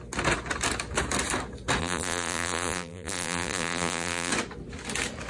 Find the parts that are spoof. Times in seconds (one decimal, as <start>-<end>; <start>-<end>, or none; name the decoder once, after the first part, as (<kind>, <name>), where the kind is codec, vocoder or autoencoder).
1.8-4.3 (vocoder, BigVGAN v2)